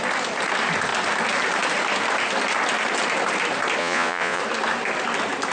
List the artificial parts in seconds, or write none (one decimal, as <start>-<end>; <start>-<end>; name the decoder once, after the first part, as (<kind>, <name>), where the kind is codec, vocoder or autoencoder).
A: 3.8-4.4 (vocoder, Vocos)